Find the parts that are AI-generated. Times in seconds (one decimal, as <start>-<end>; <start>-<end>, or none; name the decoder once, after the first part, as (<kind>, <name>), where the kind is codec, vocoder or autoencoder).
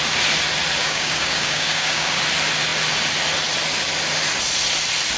0.8-2.2 (codec, DAC)